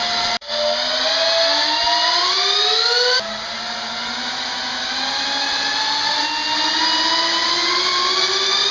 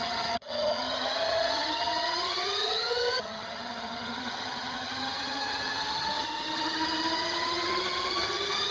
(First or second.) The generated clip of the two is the second